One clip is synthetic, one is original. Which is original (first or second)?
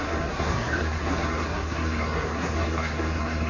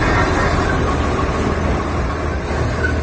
second